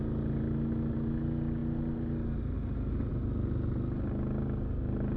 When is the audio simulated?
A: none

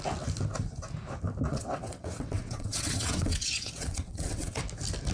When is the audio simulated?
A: 1.5-4.6 (vocoder, WaveNeXt)